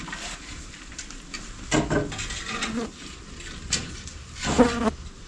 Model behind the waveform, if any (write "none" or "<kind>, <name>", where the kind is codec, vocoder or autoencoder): none